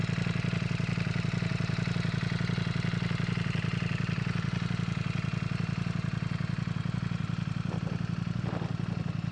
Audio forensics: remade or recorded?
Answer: recorded